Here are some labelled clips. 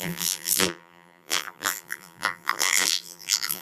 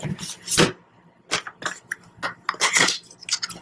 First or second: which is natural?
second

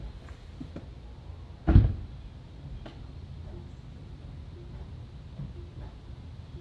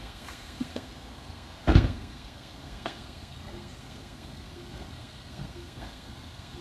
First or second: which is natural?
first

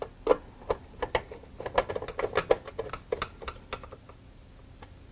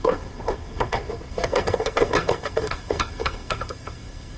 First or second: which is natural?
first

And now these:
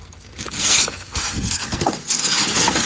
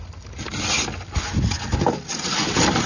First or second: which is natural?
second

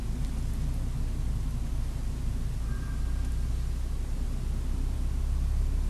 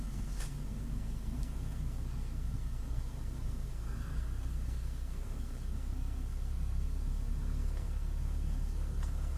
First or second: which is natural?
first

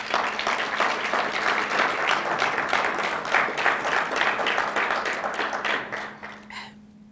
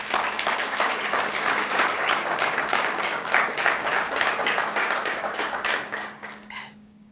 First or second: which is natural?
first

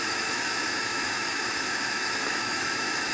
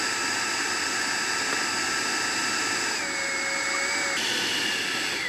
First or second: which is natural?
second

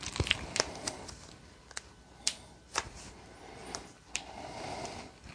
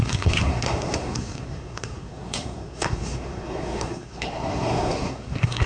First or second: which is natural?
first